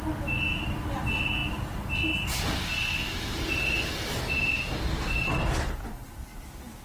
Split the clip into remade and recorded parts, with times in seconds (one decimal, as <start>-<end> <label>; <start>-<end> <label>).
0.0-6.8 recorded